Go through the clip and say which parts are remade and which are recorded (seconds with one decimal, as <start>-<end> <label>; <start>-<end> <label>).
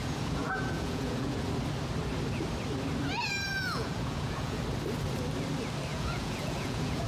0.0-1.5 remade; 1.5-3.5 recorded; 3.5-4.6 remade; 4.6-5.9 recorded; 5.9-7.1 remade